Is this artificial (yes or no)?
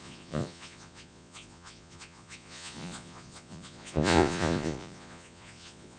yes